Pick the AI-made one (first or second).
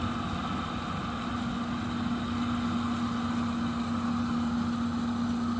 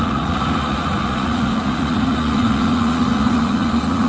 second